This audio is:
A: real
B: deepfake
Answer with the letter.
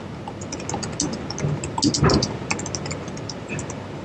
A